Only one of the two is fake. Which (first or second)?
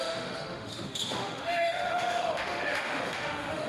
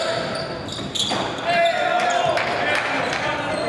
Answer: first